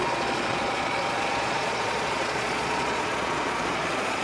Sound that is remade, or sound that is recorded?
remade